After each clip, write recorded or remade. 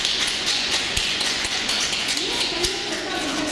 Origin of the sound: remade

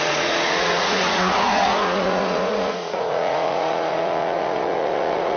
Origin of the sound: remade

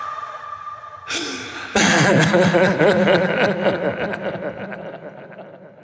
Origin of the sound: recorded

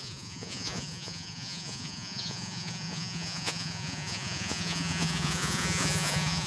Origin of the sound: remade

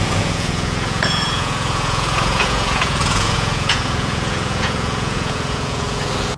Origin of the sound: remade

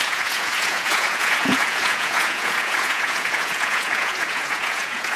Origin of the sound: remade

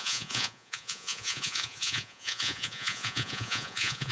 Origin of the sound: remade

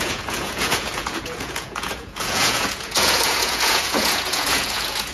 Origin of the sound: remade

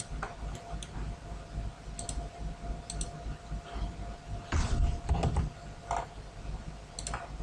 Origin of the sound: recorded